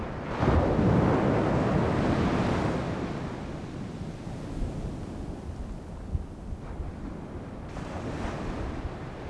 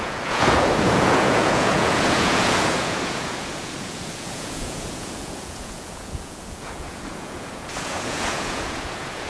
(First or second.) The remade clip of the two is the second